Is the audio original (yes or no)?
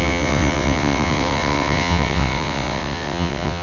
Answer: no